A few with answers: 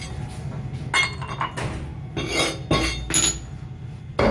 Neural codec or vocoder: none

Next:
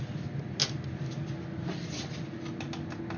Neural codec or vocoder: none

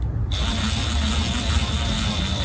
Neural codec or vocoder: none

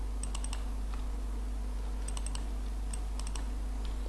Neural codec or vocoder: none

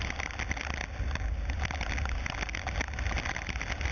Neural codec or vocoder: none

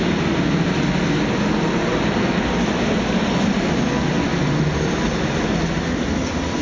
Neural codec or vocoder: none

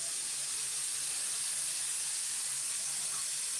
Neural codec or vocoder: none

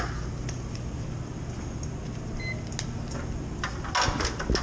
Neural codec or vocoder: none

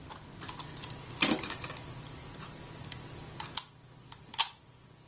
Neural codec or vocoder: none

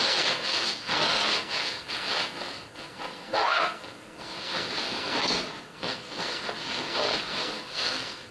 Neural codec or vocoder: codec, SNAC